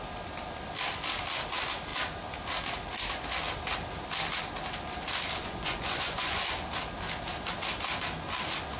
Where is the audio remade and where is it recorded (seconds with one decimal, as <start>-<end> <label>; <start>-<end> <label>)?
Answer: 0.0-5.4 recorded; 5.4-6.4 remade; 6.4-8.8 recorded